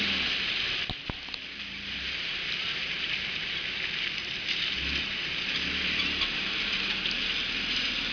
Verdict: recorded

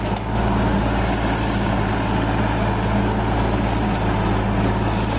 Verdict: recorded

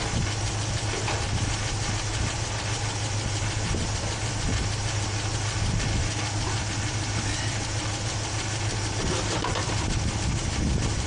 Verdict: recorded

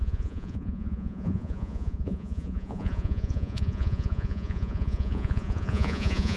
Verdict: remade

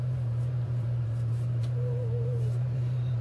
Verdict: remade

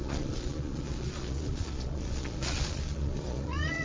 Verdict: remade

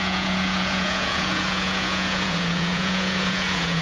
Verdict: remade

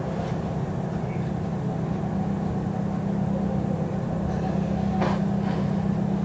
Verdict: recorded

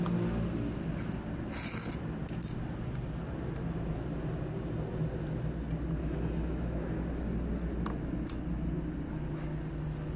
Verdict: recorded